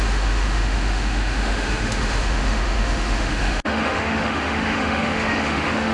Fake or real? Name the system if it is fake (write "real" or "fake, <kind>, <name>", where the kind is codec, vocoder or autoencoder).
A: fake, autoencoder, DAC-VAE